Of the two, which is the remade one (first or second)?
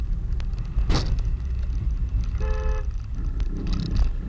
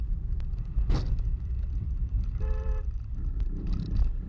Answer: second